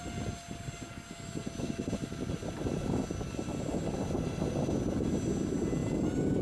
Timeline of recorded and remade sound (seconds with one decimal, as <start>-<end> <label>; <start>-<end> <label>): 0.0-6.4 recorded